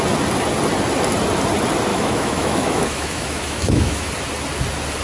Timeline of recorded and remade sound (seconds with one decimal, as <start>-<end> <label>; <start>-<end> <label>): 0.0-1.9 recorded; 1.9-4.1 remade; 4.1-5.0 recorded